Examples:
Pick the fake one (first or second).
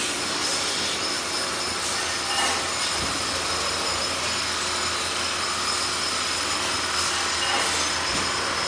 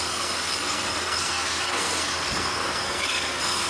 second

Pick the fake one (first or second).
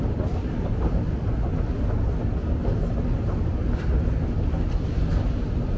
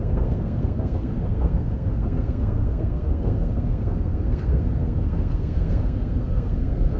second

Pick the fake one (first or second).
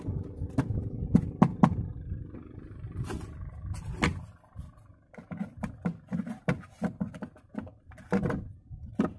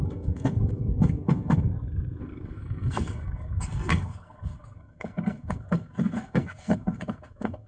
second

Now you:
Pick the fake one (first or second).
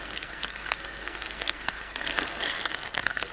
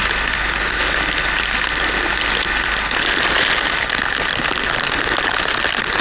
first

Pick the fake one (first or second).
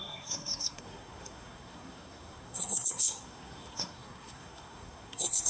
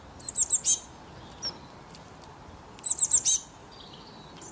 first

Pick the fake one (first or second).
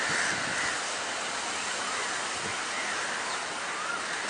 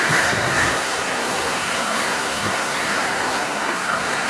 second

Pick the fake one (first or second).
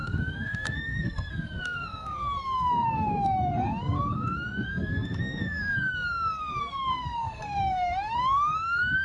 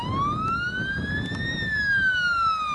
first